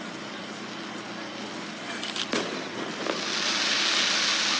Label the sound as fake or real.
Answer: real